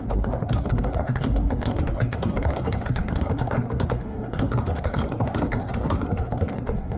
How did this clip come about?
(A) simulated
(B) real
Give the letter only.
A